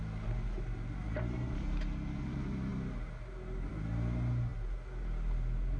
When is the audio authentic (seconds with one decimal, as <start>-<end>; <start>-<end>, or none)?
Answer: 0.0-5.8